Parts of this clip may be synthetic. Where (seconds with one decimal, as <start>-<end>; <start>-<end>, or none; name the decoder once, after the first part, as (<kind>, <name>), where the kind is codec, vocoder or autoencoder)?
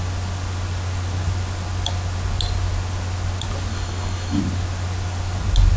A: 3.7-4.4 (codec, DAC)